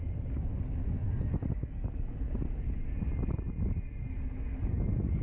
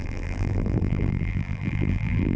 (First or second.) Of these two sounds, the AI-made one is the second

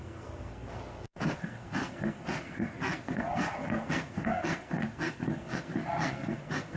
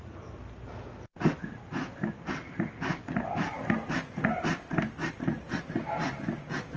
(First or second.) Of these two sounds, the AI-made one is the first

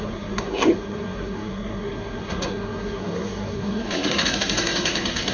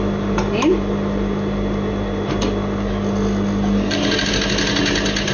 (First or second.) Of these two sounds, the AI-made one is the first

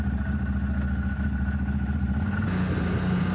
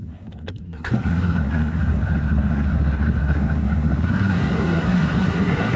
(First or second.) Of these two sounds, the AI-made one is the second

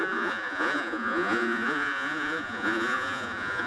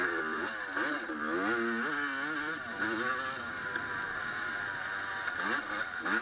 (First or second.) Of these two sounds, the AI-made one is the first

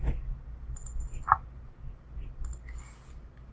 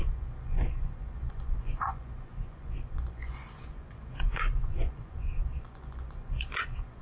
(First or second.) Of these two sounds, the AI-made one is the second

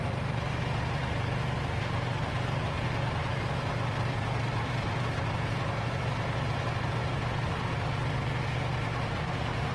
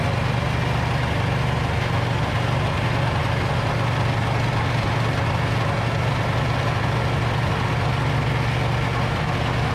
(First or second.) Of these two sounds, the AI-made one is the first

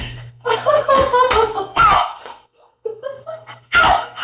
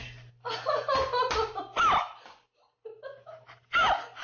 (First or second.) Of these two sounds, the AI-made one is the first